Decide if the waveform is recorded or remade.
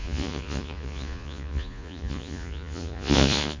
remade